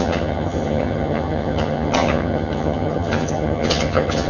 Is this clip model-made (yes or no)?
yes